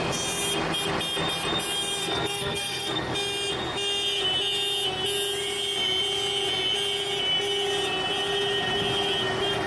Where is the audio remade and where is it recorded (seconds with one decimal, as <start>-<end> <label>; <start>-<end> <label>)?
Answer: 0.0-2.0 recorded; 2.0-3.1 remade; 3.1-9.7 recorded